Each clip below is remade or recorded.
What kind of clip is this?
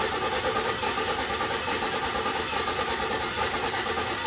recorded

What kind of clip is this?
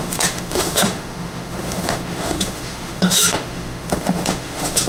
remade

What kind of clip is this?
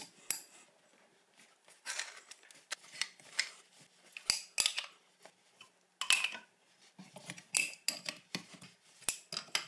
recorded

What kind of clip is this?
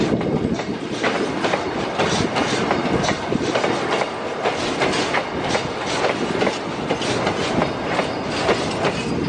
recorded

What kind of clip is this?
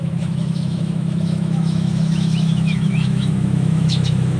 remade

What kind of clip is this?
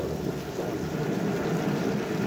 recorded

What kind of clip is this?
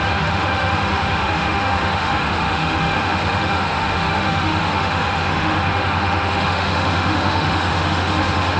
remade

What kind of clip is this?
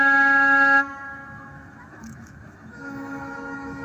remade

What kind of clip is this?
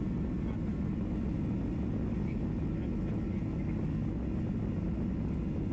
recorded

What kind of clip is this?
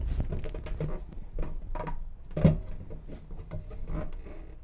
recorded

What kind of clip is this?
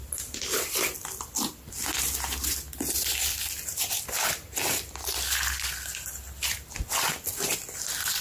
recorded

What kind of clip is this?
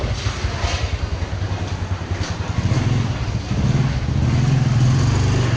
recorded